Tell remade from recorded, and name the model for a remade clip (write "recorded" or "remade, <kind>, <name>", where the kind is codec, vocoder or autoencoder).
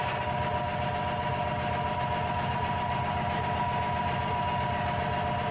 recorded